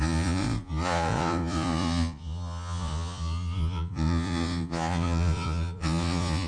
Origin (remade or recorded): remade